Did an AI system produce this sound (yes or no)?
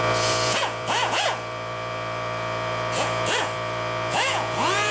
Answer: yes